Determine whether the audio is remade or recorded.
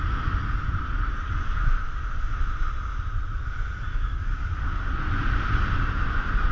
recorded